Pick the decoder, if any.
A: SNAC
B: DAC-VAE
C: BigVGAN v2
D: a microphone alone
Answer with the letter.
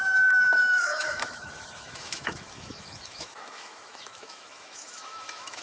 B